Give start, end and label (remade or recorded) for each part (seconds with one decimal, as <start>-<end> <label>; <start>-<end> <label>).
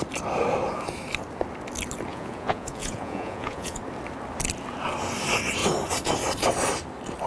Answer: 0.0-2.1 recorded; 2.1-3.8 remade; 3.8-7.3 recorded